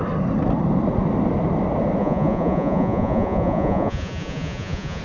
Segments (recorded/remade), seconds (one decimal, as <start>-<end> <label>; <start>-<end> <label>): 0.0-2.0 recorded; 2.0-5.0 remade